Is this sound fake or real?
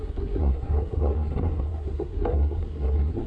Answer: fake